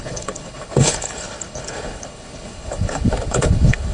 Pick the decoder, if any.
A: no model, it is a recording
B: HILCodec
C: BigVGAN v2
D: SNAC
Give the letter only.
B